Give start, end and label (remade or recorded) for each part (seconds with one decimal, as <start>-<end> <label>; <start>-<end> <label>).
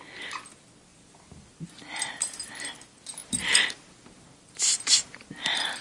0.0-0.9 recorded; 0.9-2.0 remade; 2.0-3.2 recorded; 3.2-5.3 remade; 5.3-5.8 recorded